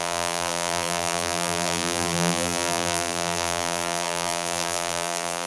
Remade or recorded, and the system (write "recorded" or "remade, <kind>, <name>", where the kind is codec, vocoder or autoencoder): remade, vocoder, BigVGAN v2